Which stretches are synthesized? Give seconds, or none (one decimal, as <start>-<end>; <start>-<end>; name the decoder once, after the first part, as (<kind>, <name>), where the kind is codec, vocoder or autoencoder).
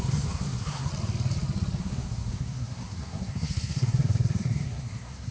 0.0-0.9 (codec, SNAC); 1.8-5.3